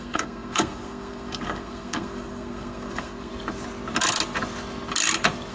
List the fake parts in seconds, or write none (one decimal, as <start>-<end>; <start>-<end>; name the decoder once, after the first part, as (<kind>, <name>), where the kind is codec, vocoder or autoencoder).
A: 0.0-3.3 (codec, SNAC)